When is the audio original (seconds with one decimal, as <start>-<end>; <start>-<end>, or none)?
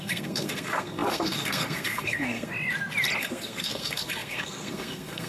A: 2.5-3.2